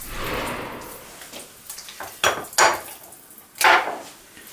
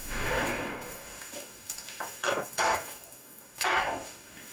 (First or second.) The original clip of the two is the first